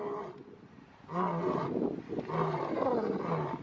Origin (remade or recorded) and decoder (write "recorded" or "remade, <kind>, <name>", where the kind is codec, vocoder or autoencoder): recorded